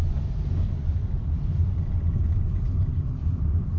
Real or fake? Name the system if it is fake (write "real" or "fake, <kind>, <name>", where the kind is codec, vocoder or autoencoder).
fake, vocoder, BigVGAN v2